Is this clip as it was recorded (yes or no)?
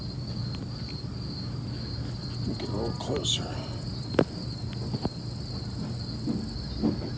yes